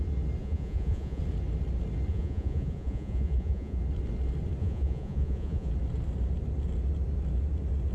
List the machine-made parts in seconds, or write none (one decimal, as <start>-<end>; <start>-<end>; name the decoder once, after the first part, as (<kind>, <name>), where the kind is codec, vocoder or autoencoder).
0.4-1.2 (vocoder, Vocos); 2.1-3.8; 4.6-5.7